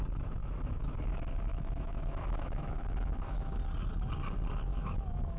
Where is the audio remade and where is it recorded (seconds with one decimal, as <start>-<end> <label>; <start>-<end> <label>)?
0.0-0.4 recorded; 0.4-3.6 remade; 3.6-4.7 recorded; 4.7-5.4 remade